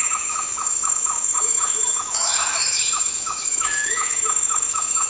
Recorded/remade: remade